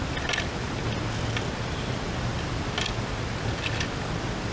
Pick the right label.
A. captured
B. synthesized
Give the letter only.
A